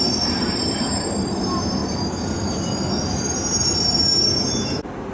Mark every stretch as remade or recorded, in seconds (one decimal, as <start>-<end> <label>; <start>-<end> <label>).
0.0-5.1 recorded